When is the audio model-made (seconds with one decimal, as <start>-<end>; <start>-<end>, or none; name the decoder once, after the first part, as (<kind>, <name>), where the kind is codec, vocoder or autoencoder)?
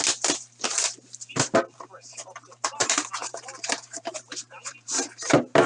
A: 0.7-1.6 (vocoder, BigVGAN v2); 2.8-5.3